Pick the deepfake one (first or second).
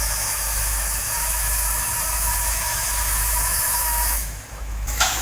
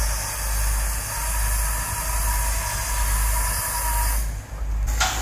first